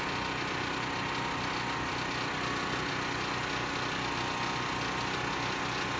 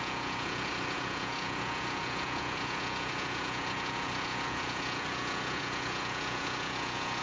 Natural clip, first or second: first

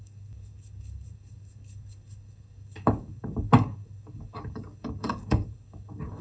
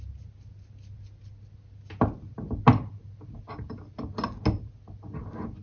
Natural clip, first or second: second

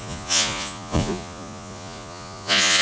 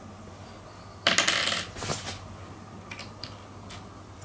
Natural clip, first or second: second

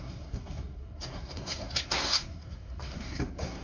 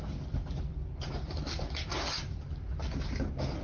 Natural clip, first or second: second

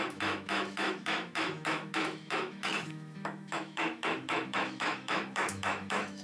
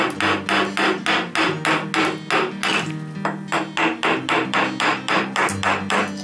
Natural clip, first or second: second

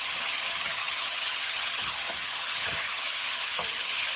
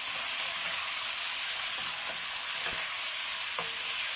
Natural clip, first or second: second